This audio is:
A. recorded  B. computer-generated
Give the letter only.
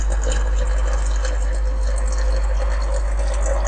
A